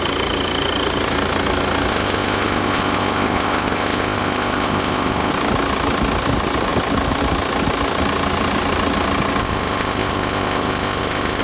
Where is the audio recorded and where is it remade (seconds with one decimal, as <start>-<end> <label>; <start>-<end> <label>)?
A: 0.0-1.9 recorded; 1.9-5.3 remade; 5.3-9.4 recorded; 9.4-11.4 remade